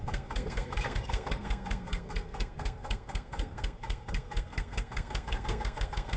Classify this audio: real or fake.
fake